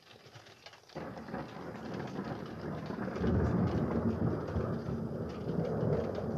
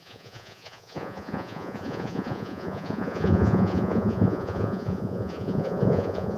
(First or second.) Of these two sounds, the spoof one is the second